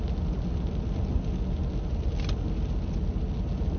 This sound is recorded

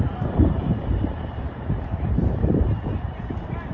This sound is remade